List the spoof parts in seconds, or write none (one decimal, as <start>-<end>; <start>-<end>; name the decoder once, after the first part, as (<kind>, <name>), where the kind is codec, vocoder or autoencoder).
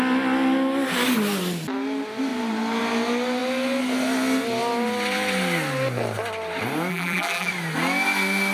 6.9-7.5 (vocoder, BigVGAN v2)